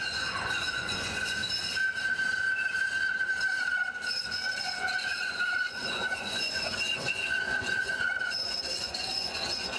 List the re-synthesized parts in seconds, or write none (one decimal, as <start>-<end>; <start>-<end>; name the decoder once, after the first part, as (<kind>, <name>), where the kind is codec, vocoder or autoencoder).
0.0-1.4 (vocoder, Vocos); 4.6-9.8